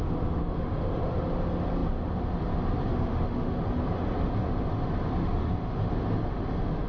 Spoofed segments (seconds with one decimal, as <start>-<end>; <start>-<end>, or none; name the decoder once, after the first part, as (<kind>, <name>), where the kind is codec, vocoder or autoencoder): 0.4-1.1 (autoencoder, DAC-VAE); 2.9-3.6; 5.2-5.9